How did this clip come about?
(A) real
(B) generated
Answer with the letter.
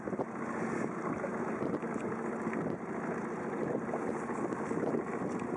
A